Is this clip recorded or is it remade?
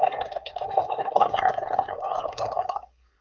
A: remade